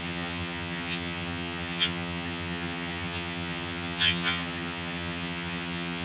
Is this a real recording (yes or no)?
no